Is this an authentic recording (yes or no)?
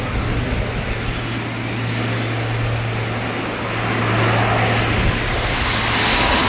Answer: yes